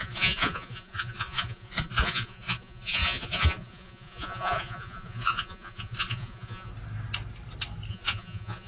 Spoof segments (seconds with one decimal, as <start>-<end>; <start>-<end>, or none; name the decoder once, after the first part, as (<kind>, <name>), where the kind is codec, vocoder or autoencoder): 0.0-6.7 (vocoder, Vocos); 7.9-8.7